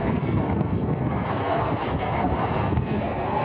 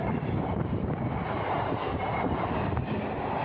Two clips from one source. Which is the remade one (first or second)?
first